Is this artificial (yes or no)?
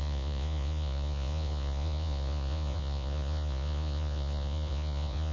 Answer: yes